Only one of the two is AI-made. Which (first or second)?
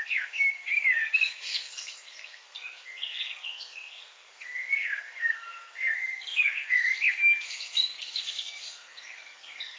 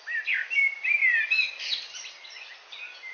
first